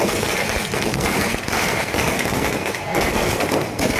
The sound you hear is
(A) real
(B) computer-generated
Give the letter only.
B